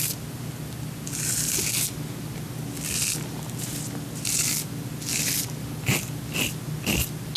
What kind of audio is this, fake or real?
real